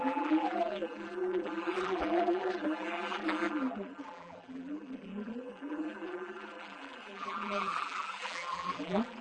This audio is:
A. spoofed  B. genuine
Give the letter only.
A